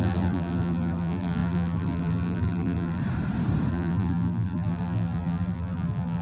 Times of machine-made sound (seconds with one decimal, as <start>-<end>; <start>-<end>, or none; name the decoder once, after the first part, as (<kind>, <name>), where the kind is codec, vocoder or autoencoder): 0.0-3.0 (vocoder, BigVGAN v2); 3.7-6.2